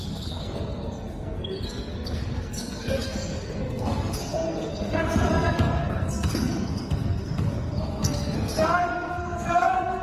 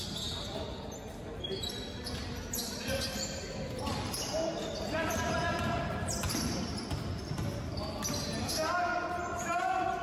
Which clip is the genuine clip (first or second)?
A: second